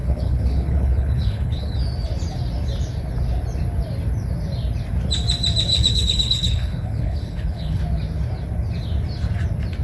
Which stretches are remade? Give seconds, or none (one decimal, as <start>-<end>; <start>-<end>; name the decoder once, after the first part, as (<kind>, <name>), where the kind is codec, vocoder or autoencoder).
0.0-1.8 (codec, HILCodec); 5.7-7.8